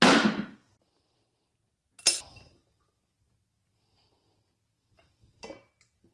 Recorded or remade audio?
recorded